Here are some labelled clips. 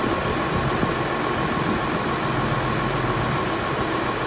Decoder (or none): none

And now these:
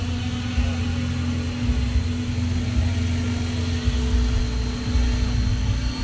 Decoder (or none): none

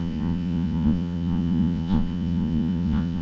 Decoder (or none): vocoder, Vocos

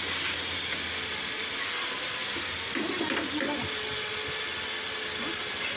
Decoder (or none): none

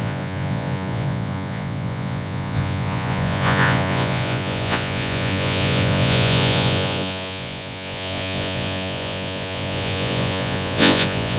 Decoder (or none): vocoder, Vocos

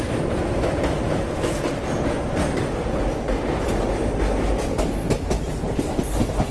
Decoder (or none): none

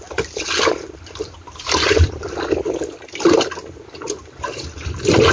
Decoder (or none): none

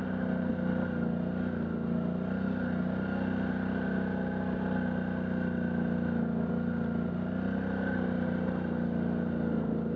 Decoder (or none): none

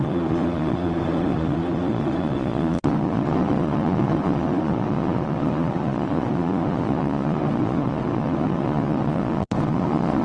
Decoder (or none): vocoder, Vocos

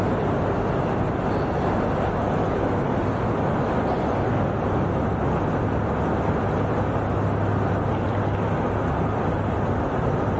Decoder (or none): none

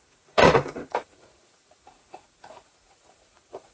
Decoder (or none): vocoder, Vocos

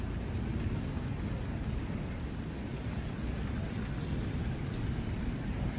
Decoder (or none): none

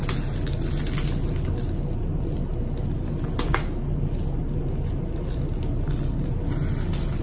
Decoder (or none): none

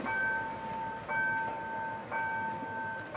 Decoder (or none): none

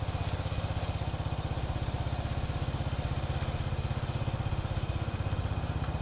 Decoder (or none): none